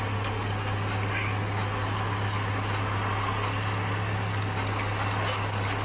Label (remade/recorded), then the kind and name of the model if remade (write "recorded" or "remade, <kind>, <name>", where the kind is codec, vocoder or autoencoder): recorded